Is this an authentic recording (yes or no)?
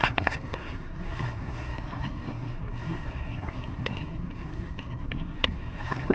no